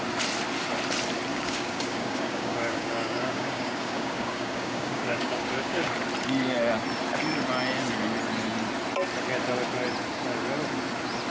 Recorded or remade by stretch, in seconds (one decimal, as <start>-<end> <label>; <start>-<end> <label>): 0.0-1.3 recorded; 1.3-5.9 remade; 5.9-11.3 recorded

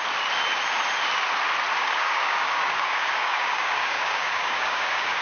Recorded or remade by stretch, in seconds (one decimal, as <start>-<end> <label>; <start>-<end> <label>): 0.0-1.8 recorded; 1.8-5.2 remade

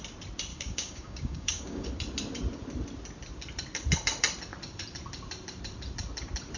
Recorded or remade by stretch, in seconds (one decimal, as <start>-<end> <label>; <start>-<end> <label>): 0.0-0.5 recorded; 0.5-1.9 remade; 1.9-6.6 recorded

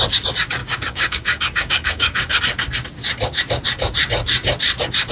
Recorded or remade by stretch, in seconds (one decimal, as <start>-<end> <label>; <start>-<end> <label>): 0.0-0.6 recorded; 0.6-2.4 remade; 2.4-5.1 recorded

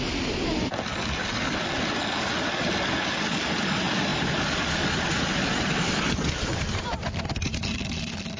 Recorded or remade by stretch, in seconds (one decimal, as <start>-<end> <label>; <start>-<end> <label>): 0.0-8.4 recorded